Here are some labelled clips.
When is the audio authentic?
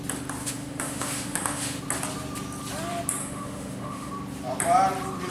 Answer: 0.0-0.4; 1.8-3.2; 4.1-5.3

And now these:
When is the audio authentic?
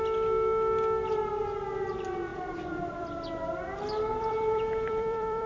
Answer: 0.0-2.3; 3.2-4.1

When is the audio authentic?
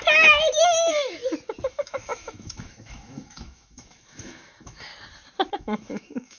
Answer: 1.2-1.7; 4.9-5.5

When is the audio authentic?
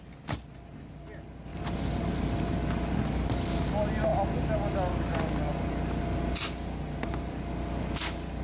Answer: 0.0-1.5; 2.0-8.4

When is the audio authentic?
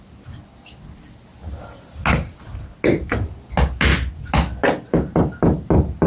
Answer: 0.0-6.1